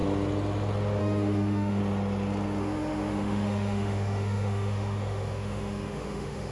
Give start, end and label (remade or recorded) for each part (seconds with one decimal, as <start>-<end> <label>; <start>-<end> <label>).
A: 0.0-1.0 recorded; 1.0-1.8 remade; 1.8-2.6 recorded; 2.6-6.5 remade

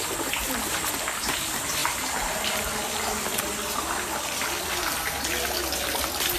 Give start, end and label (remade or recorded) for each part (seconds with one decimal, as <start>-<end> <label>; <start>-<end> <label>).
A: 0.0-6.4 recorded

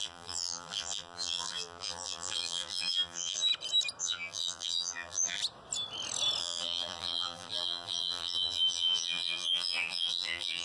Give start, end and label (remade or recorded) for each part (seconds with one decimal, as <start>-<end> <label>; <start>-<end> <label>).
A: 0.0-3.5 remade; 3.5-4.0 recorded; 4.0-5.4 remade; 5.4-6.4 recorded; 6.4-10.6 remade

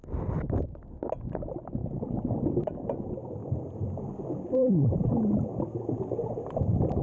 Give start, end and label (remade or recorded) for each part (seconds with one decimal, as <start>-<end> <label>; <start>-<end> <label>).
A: 0.0-1.8 recorded; 1.8-2.7 remade; 2.7-3.4 recorded; 3.4-7.0 remade